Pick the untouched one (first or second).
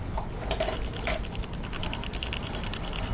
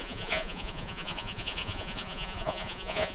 first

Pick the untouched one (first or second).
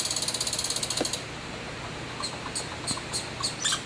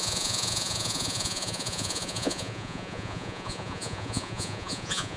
first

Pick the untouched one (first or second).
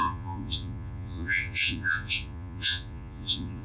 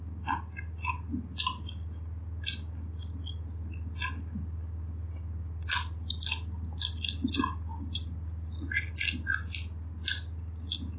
second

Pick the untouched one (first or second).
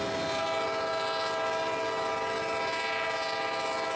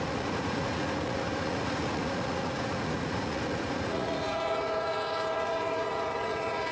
first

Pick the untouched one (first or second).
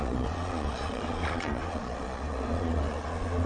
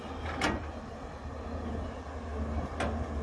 second